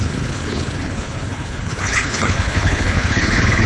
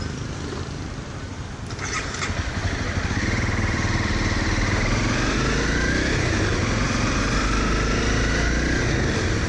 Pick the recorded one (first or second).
second